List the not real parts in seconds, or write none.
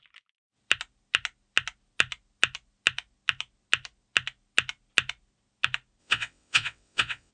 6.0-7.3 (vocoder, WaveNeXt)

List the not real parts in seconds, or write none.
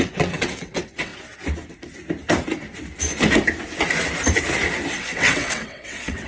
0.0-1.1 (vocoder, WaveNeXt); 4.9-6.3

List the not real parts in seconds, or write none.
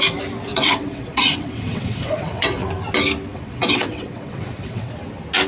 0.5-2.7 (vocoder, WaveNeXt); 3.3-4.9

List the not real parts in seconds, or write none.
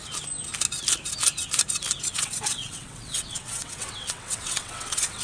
2.1-5.2 (vocoder, WaveNeXt)